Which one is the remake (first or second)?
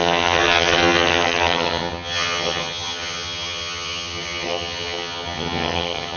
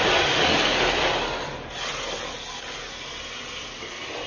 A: first